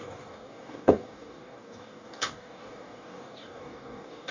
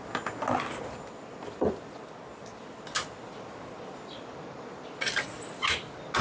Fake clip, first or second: first